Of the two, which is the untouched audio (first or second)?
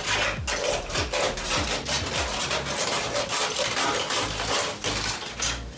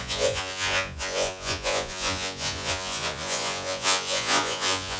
first